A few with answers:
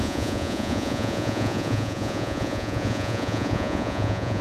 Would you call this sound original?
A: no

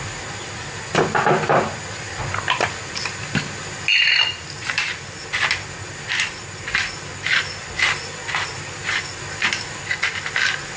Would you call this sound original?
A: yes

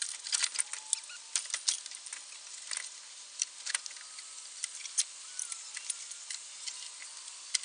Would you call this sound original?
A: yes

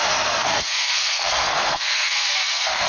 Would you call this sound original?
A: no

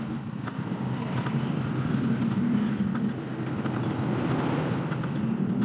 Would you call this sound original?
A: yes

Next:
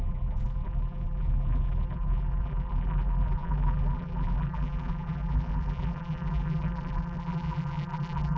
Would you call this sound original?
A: no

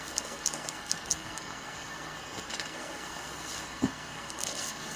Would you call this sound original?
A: no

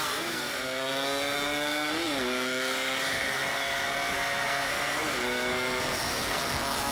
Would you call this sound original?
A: no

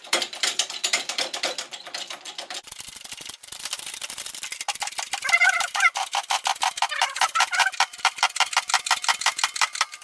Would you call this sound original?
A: no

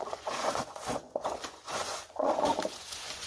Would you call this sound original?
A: no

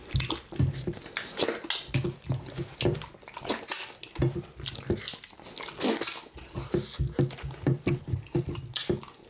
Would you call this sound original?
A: yes